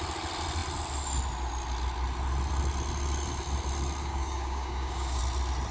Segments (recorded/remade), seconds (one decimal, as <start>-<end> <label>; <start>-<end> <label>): 0.0-4.0 recorded; 4.0-5.2 remade; 5.2-5.7 recorded